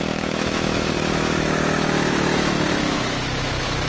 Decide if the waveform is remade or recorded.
remade